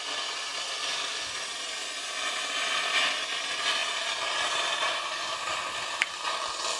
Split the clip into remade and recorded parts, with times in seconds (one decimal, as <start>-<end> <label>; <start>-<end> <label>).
0.0-0.5 recorded; 0.5-1.7 remade; 1.7-3.8 recorded; 3.8-6.1 remade; 6.1-6.8 recorded